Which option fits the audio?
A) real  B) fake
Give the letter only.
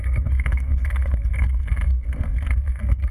B